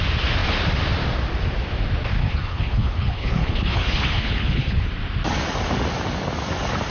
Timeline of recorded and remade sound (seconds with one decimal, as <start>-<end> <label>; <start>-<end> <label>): 0.0-2.2 recorded; 2.2-4.9 remade; 4.9-6.9 recorded